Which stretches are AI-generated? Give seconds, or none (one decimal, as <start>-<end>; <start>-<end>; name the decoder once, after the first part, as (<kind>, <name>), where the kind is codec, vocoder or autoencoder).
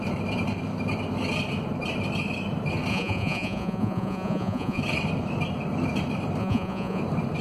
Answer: 2.9-4.8 (vocoder, Vocos); 6.4-7.0